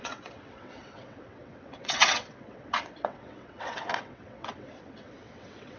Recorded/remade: remade